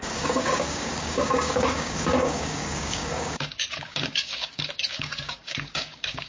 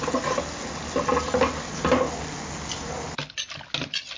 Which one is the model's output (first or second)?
first